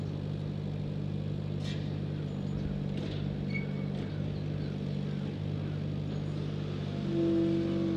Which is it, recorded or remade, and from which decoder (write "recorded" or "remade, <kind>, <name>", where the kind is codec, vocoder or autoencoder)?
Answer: recorded